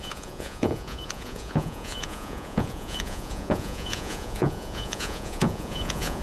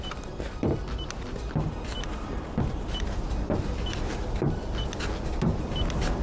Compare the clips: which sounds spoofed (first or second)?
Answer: first